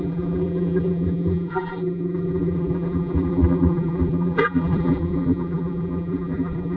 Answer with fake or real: fake